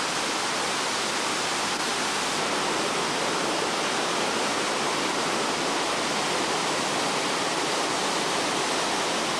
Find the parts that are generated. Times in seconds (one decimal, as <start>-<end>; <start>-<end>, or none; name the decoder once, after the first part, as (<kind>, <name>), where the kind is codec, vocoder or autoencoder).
none